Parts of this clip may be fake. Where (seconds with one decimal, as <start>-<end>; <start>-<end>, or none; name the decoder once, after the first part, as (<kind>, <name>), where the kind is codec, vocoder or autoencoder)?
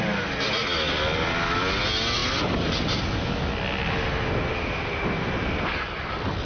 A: none